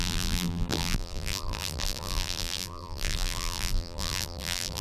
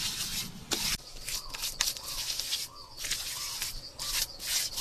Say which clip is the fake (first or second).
first